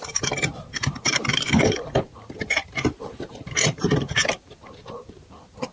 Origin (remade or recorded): remade